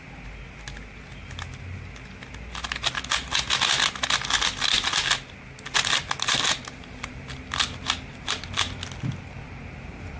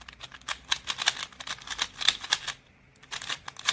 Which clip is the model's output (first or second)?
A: second